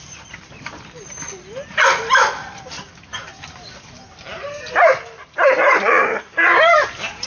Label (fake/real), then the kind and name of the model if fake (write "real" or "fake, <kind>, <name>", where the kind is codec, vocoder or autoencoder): fake, vocoder, BigVGAN v2